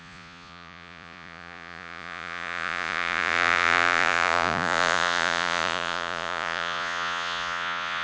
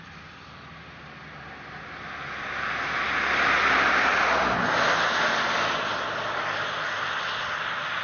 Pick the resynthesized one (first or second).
first